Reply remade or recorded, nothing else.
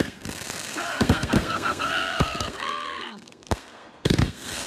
remade